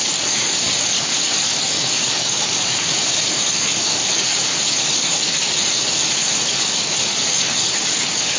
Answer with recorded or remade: remade